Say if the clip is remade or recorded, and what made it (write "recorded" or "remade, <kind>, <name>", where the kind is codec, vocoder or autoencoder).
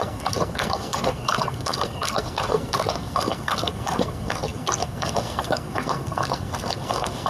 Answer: remade, codec, SNAC